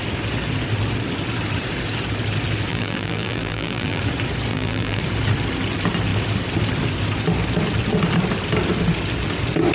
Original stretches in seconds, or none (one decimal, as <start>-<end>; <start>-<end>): 0.0-2.7; 4.0-4.5; 5.0-9.7